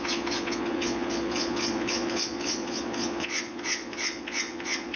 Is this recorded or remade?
remade